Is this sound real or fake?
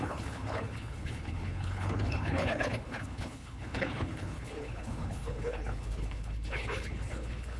fake